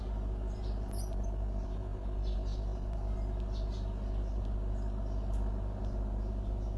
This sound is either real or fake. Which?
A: real